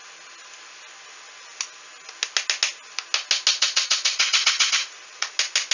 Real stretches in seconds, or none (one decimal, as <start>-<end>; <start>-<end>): 0.0-3.5; 5.3-5.7